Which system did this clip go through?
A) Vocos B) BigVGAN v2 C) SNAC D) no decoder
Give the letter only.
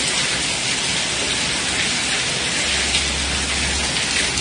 D